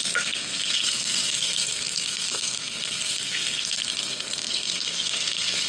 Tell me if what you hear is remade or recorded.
remade